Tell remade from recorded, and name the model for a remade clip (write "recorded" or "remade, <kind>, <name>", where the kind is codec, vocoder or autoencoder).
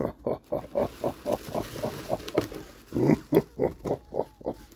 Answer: recorded